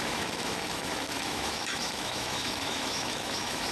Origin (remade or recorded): remade